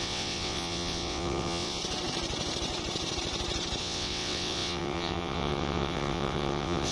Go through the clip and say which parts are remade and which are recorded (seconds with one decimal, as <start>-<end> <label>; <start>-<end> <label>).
0.0-1.8 remade; 1.8-3.8 recorded; 3.8-6.9 remade